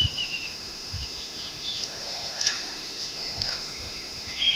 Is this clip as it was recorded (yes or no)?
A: no